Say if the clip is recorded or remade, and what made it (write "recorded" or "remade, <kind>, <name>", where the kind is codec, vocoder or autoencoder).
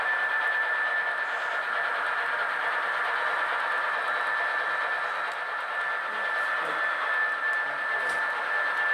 recorded